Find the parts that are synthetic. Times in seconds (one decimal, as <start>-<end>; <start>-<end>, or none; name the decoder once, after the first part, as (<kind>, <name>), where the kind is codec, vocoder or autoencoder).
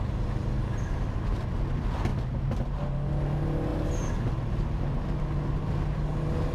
none